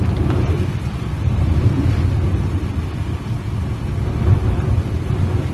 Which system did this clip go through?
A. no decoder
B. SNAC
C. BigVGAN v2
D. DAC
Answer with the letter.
A